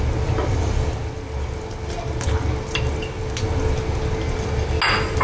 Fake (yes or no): no